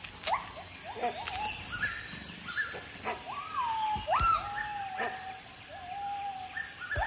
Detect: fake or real real